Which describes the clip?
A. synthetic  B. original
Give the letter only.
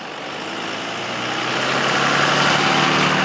B